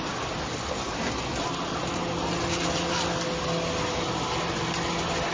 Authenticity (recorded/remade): recorded